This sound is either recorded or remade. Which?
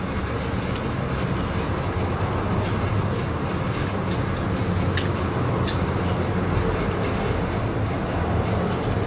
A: recorded